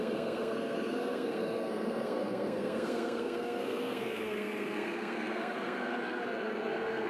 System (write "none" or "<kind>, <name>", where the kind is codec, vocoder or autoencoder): codec, SNAC